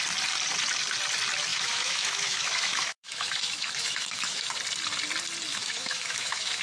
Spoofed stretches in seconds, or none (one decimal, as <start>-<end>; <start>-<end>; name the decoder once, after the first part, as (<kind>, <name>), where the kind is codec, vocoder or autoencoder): 1.5-4.5 (autoencoder, DAC-VAE); 5.5-6.6